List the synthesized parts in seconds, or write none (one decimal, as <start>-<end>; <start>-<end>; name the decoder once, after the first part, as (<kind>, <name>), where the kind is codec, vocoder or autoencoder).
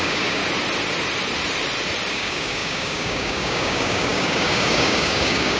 0.0-0.4 (codec, DAC); 2.1-5.6